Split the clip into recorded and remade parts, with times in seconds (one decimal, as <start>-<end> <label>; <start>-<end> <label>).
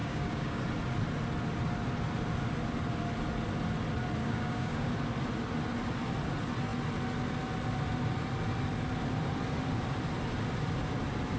0.0-0.6 remade; 0.6-4.2 recorded; 4.2-4.9 remade; 4.9-11.4 recorded